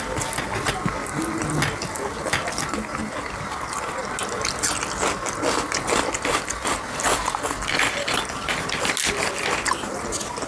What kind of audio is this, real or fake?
real